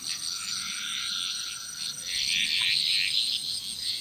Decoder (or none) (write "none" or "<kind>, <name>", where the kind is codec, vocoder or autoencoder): none